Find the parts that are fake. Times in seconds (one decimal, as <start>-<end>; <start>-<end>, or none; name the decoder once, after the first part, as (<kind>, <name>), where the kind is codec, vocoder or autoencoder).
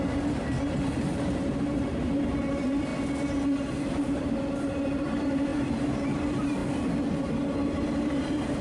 0.0-2.9 (vocoder, BigVGAN v2); 3.7-6.6; 7.2-8.6